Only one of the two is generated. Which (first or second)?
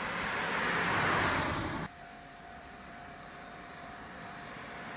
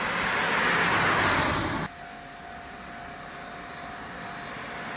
first